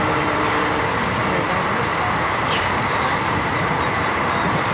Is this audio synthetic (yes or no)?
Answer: yes